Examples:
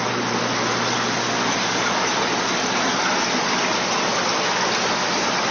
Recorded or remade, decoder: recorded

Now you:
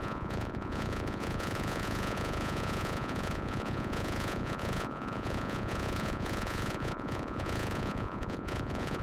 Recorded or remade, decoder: remade, vocoder, Vocos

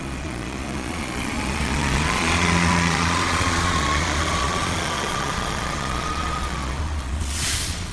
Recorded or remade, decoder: remade, vocoder, Vocos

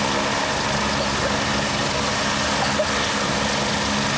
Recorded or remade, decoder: recorded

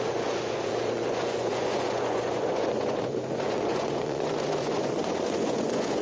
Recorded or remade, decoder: remade, vocoder, Vocos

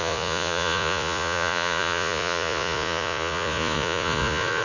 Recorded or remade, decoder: remade, vocoder, Vocos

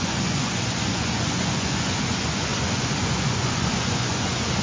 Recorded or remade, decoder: remade, vocoder, Vocos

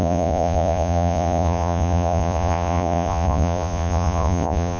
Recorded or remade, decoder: remade, vocoder, Vocos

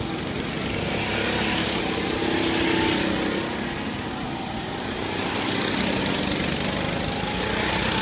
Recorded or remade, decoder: recorded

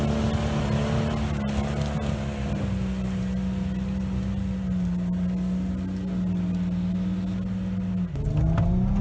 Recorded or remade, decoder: recorded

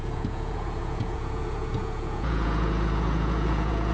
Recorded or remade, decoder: remade, vocoder, Vocos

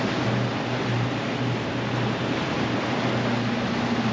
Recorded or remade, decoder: recorded